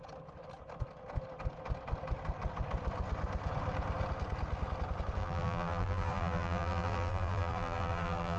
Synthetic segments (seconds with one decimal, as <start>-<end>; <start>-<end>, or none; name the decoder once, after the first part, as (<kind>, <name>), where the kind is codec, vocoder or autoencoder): 5.2-8.4 (vocoder, BigVGAN v2)